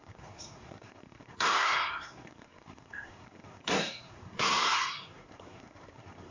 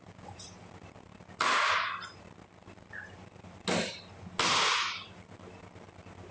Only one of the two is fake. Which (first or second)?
first